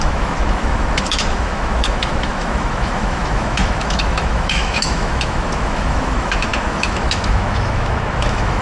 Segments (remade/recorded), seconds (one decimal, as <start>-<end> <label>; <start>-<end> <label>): 0.0-8.6 remade